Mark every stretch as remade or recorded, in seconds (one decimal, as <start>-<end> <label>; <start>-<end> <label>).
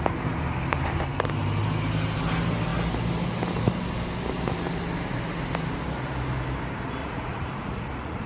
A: 0.0-7.0 recorded; 7.0-8.3 remade